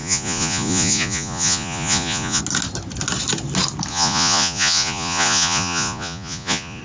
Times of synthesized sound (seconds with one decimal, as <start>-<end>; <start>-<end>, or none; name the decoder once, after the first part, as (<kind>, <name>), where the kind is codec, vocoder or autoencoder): 0.0-2.4 (vocoder, Vocos); 3.9-6.8

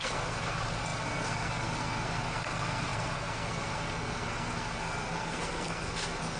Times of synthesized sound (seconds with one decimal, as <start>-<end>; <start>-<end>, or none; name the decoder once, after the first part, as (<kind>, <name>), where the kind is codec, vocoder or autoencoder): 0.0-6.4 (codec, SNAC)

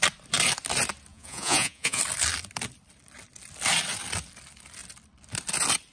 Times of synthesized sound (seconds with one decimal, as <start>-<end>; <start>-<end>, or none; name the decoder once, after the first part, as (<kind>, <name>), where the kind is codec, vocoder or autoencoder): 1.1-2.0 (vocoder, Vocos)

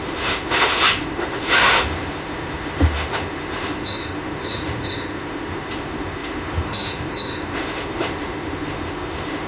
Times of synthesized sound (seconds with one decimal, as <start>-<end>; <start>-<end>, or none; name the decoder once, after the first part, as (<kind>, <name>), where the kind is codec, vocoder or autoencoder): 0.0-9.5 (autoencoder, DAC-VAE)

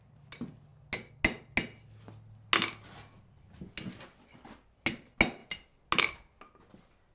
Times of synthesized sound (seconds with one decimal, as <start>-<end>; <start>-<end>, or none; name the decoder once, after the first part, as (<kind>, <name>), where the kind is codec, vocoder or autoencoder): none

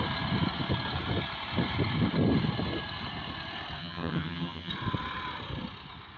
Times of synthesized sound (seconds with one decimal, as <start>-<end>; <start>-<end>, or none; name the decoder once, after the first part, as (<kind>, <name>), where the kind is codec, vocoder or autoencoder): 3.8-4.7 (vocoder, HiFi-GAN)

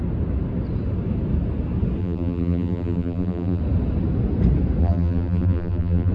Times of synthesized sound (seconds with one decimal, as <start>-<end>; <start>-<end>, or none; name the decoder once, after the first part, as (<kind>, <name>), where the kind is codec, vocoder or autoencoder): 2.0-3.6 (vocoder, BigVGAN v2); 4.8-6.1

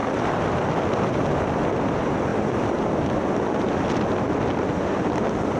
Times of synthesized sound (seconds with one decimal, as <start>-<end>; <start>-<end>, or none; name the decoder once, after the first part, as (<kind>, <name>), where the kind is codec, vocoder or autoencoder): none